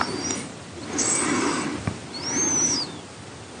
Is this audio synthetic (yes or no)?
no